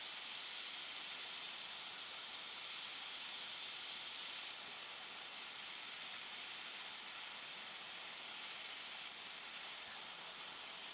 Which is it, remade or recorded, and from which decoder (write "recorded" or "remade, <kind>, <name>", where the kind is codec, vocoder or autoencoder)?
recorded